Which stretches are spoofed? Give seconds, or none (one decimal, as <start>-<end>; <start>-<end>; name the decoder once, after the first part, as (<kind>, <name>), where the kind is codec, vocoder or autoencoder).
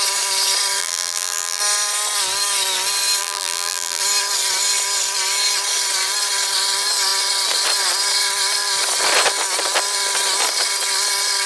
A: 0.8-1.6 (vocoder, BigVGAN v2); 3.2-4.0